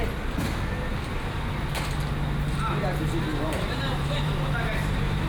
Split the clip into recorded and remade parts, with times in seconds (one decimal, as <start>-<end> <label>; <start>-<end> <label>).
0.0-3.3 recorded; 3.3-5.3 remade